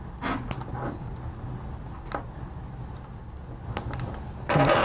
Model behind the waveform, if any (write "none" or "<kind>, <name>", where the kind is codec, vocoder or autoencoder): none